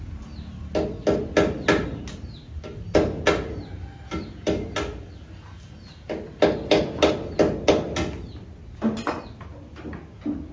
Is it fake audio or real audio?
real